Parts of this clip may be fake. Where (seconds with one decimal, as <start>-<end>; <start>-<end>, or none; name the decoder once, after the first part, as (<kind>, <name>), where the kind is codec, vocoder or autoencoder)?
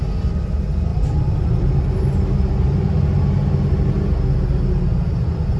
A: 0.9-1.7 (vocoder, BigVGAN v2)